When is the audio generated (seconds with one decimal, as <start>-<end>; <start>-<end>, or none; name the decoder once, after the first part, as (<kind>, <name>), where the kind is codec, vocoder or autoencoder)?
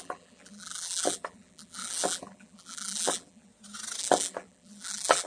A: 0.0-3.5 (vocoder, BigVGAN v2); 4.0-5.3